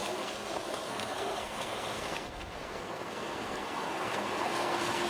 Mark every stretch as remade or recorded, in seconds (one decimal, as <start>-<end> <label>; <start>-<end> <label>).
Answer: 0.0-5.1 remade